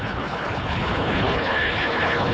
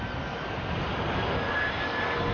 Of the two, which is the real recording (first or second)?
second